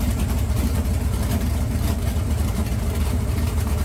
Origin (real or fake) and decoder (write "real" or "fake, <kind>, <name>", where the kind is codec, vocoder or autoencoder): fake, vocoder, BigVGAN v2